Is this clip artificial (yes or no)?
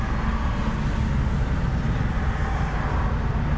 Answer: no